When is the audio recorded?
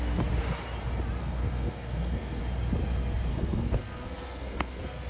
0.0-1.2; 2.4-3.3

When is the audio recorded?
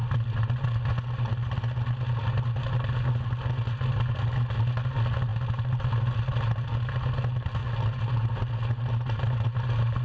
0.0-10.0